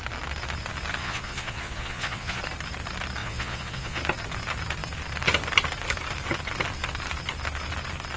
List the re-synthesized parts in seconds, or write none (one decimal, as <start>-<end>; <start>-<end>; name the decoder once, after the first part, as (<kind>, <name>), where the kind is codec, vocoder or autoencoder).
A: 1.0-2.4 (vocoder, Vocos); 3.2-4.0